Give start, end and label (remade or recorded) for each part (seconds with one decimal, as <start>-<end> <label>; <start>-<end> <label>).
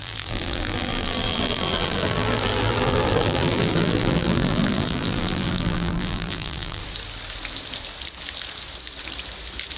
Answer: 0.0-6.8 remade; 6.8-9.8 recorded